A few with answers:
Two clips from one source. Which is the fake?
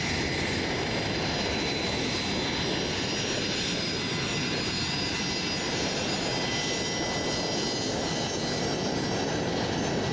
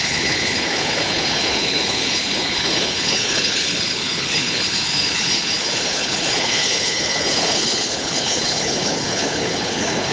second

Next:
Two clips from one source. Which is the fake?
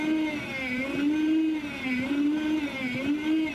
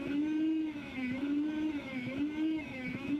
second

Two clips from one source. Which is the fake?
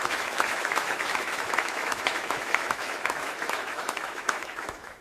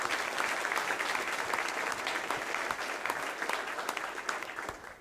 first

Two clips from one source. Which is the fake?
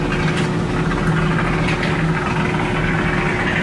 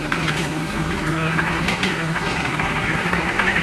second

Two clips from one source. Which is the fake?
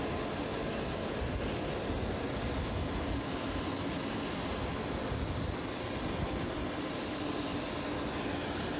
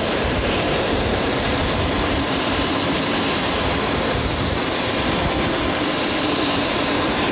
second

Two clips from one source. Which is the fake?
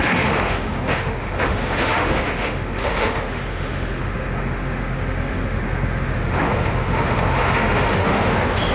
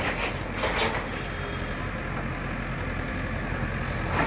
first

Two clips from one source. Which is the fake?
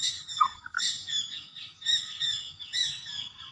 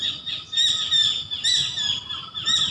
first